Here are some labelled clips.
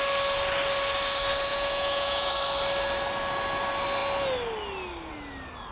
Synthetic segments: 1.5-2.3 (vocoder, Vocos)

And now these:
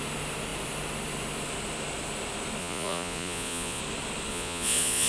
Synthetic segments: 2.6-3.8 (vocoder, Vocos); 4.3-5.1

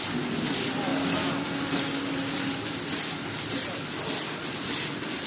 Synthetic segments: none

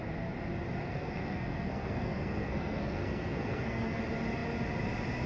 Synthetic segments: 0.8-4.0 (codec, SNAC)

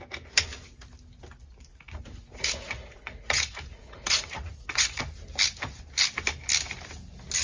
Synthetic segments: 1.7-5.0 (vocoder, Vocos)